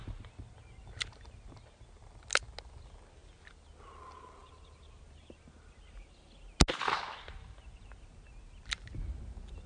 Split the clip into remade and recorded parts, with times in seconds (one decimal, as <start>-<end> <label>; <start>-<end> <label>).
0.0-1.5 remade; 1.5-9.7 recorded